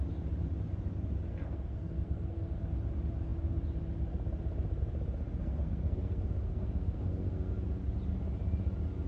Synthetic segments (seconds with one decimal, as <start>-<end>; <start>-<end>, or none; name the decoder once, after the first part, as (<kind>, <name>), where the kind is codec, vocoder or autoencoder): 1.3-2.6 (codec, SNAC); 5.4-7.5